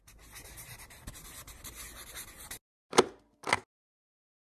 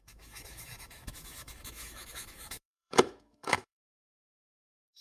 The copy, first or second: second